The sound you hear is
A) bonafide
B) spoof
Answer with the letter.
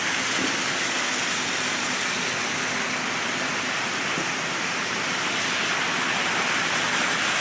A